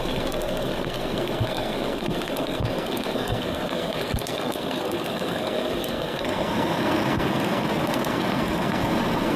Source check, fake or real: fake